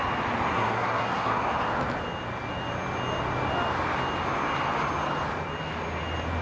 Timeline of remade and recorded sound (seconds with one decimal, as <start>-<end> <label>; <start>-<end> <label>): 0.0-0.5 recorded; 0.5-1.4 remade; 1.4-6.4 recorded